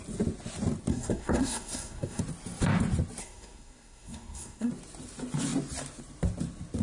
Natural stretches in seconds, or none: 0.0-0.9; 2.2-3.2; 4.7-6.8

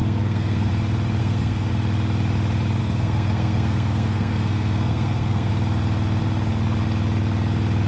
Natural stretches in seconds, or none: 0.7-1.2; 1.7-2.8; 5.5-7.9

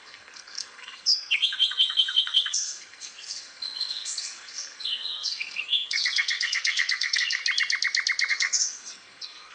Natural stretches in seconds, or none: 7.4-8.3

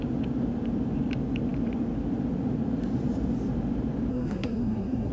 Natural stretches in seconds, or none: 0.0-4.1

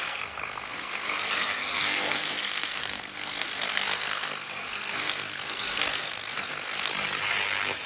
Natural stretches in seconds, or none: 6.9-7.9

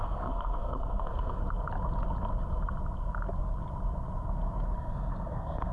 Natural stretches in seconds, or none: 1.4-4.8

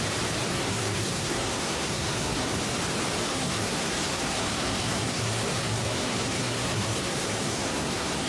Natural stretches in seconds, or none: 0.0-0.5; 2.6-3.3

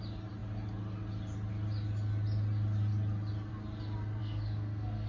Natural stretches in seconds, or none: 0.0-4.2